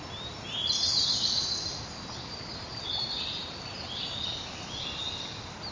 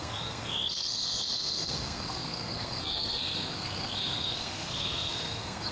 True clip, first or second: first